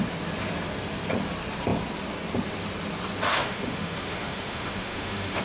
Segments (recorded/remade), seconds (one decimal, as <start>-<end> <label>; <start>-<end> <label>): 0.0-3.3 recorded; 3.3-5.4 remade